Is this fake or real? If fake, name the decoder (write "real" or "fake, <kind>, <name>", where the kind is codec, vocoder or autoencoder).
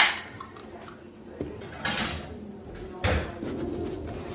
real